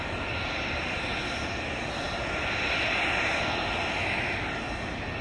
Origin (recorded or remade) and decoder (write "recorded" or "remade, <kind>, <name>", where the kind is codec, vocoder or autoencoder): recorded